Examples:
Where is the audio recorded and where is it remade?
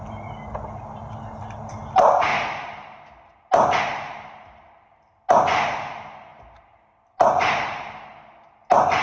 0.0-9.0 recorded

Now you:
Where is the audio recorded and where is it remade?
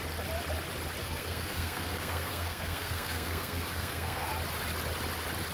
0.0-1.0 recorded; 1.0-4.3 remade; 4.3-5.5 recorded